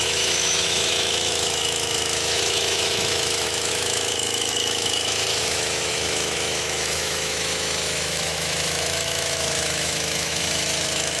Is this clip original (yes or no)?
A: no